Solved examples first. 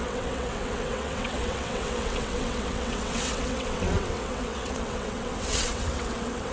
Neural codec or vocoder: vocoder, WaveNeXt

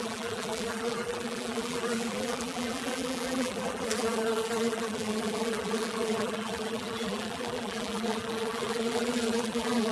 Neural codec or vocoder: vocoder, BigVGAN v2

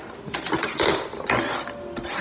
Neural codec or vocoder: none